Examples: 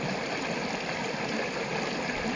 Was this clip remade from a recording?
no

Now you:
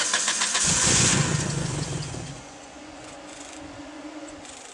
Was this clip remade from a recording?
yes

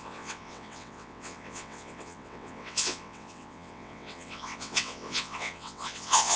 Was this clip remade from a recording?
yes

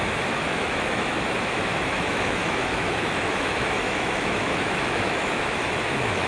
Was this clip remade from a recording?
yes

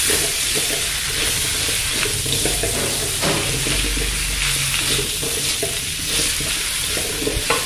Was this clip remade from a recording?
no